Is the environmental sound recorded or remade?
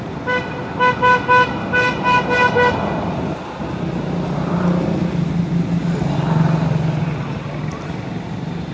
recorded